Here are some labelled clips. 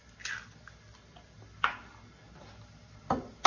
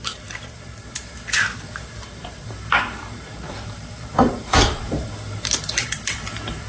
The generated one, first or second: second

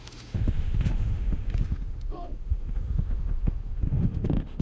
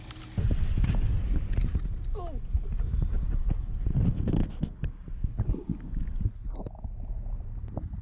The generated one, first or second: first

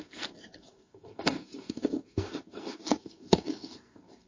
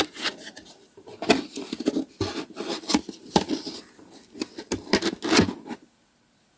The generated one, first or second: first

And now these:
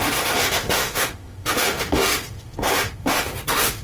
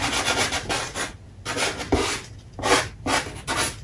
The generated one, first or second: first